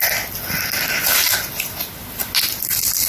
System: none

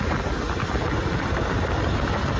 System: none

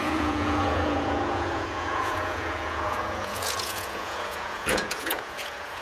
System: vocoder, Vocos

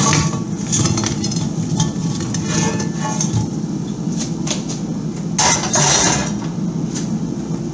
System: none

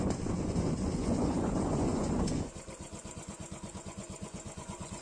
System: vocoder, Vocos